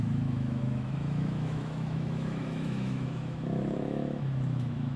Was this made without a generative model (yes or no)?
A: no